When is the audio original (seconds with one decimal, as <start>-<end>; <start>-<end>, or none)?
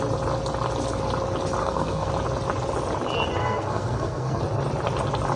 0.0-1.6; 2.1-3.4; 4.4-5.4